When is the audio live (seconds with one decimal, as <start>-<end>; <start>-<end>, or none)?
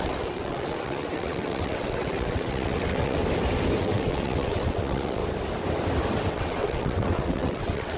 3.2-3.8; 5.2-6.3